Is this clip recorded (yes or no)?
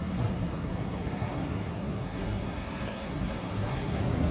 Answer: no